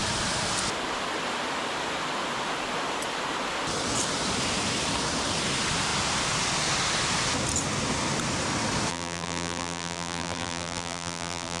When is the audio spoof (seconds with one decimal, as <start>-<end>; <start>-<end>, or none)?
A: 8.9-11.6